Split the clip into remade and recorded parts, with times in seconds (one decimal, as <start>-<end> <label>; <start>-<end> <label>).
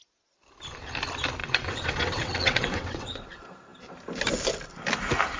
0.0-1.4 recorded; 1.4-3.3 remade; 3.3-5.4 recorded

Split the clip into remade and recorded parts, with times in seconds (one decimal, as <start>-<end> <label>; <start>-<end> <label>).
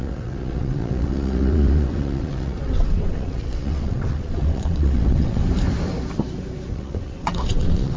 0.0-5.4 remade; 5.4-6.7 recorded; 6.7-8.0 remade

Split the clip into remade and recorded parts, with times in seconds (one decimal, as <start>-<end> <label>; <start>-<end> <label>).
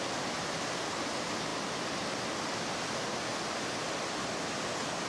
0.0-5.1 recorded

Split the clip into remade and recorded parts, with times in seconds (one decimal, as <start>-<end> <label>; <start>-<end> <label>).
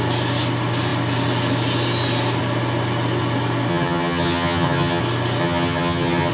0.0-3.7 recorded; 3.7-5.0 remade; 5.0-5.4 recorded; 5.4-6.3 remade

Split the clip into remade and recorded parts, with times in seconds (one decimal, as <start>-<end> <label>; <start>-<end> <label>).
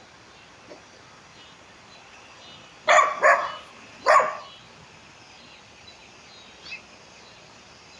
0.0-8.0 recorded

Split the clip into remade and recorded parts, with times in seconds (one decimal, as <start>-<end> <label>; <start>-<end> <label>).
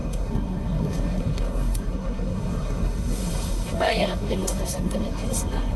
0.0-5.8 remade